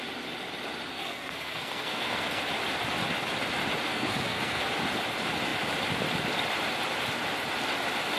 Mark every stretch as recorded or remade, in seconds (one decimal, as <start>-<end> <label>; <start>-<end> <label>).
0.0-0.9 recorded; 0.9-2.4 remade; 2.4-3.9 recorded; 3.9-4.6 remade; 4.6-8.2 recorded